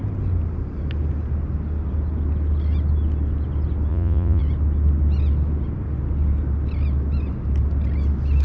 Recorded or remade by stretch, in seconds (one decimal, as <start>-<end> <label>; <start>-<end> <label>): 0.0-3.9 recorded; 3.9-4.4 remade; 4.4-8.4 recorded